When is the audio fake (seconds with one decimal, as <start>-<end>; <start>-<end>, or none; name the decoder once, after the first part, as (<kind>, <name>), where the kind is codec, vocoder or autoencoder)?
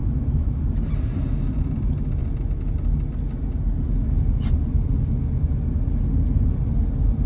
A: 0.0-0.6 (autoencoder, DAC-VAE)